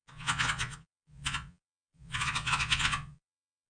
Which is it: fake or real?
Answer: fake